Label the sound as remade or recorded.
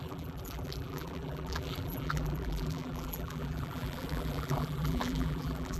remade